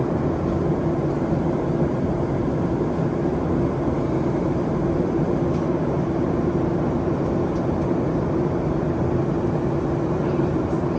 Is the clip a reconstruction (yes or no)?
no